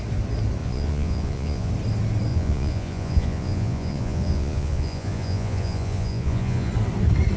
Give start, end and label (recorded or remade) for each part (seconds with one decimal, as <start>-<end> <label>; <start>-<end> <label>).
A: 0.0-0.6 recorded; 0.6-1.7 remade; 1.7-2.3 recorded; 2.3-6.7 remade; 6.7-7.4 recorded